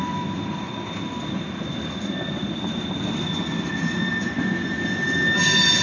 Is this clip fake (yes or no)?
no